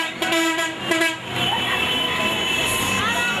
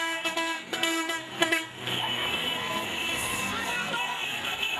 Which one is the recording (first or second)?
first